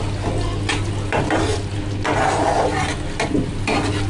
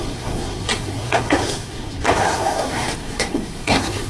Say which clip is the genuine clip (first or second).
first